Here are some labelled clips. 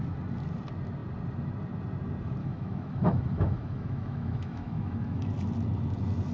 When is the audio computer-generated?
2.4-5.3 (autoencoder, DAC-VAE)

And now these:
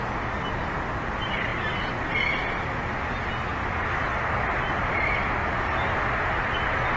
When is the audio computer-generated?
none

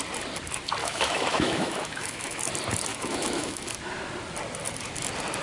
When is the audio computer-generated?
0.8-2.4 (autoencoder, DAC-VAE); 2.9-3.6